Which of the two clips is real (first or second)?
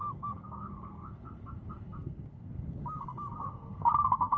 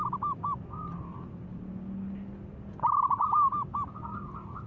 second